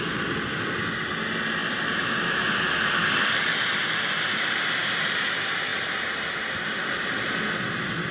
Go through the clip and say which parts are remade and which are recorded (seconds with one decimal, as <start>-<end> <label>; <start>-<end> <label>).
0.0-5.7 recorded; 5.7-7.3 remade; 7.3-8.1 recorded

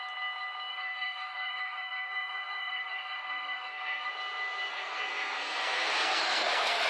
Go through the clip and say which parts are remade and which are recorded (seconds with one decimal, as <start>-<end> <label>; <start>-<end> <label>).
0.0-0.7 recorded; 0.7-4.1 remade; 4.1-4.7 recorded; 4.7-6.9 remade

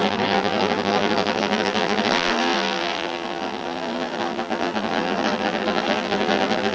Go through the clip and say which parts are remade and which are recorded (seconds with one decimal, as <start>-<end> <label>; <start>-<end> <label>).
0.0-6.7 remade

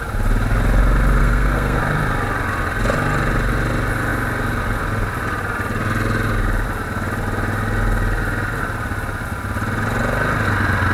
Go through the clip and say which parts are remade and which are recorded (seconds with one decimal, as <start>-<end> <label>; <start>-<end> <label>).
0.0-1.2 recorded; 1.2-1.8 remade; 1.8-10.9 recorded

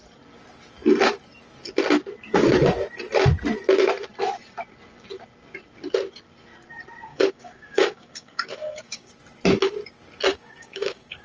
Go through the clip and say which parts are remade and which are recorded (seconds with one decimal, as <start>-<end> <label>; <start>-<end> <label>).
0.0-7.1 recorded; 7.1-9.1 remade; 9.1-10.3 recorded; 10.3-11.2 remade

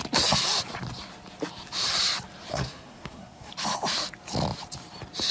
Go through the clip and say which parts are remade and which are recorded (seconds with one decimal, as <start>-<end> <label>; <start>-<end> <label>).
0.0-2.5 recorded; 2.5-3.5 remade; 3.5-5.3 recorded

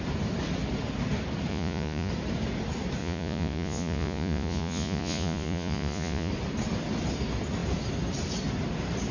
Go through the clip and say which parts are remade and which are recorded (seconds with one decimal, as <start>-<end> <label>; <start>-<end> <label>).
0.0-1.5 recorded; 1.5-2.1 remade; 2.1-3.0 recorded; 3.0-6.3 remade; 6.3-9.1 recorded